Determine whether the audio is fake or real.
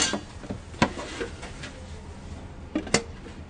real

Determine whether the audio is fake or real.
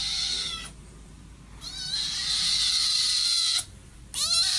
real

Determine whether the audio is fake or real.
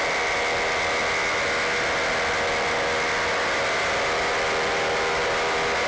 real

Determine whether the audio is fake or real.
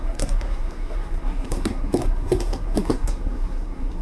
fake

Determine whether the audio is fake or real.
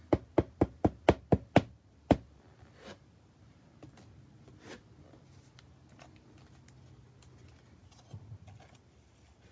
real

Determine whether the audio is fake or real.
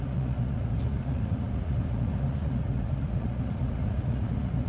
fake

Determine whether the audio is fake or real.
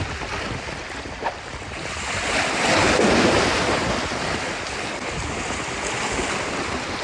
real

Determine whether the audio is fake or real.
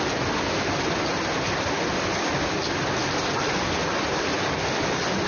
real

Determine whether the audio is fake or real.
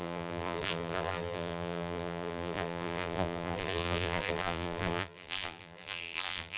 fake